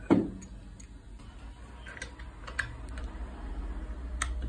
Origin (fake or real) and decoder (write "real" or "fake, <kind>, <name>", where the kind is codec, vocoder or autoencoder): real